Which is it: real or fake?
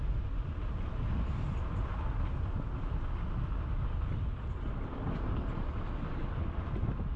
real